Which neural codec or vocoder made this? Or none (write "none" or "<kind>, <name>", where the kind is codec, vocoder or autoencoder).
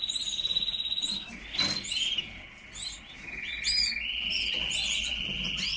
none